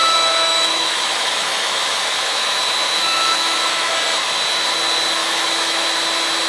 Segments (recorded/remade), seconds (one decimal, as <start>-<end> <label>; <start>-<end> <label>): 0.0-3.9 remade; 3.9-5.2 recorded; 5.2-5.8 remade; 5.8-6.5 recorded